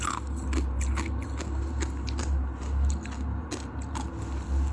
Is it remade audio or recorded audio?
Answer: recorded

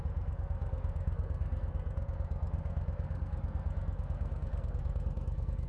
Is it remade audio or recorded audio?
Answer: remade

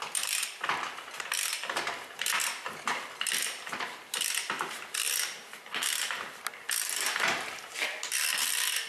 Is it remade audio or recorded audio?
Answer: remade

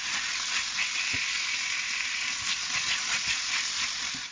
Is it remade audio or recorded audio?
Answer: recorded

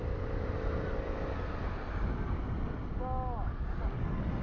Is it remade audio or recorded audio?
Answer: recorded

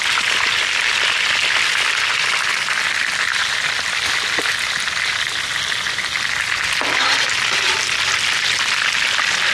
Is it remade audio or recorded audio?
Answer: recorded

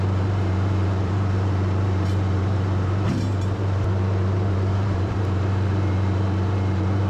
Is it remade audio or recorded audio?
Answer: remade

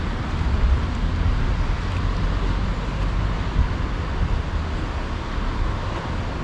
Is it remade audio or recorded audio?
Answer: recorded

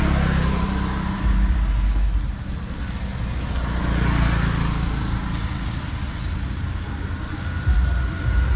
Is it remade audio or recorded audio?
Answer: recorded